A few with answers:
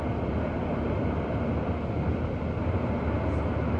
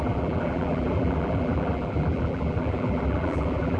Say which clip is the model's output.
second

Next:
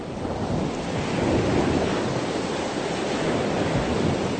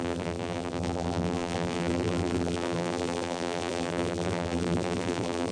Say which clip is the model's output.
second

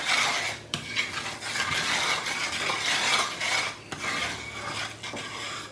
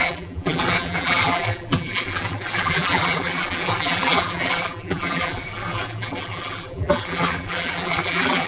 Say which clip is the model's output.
second